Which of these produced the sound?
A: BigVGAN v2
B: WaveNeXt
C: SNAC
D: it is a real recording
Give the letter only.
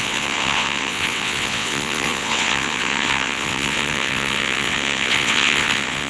B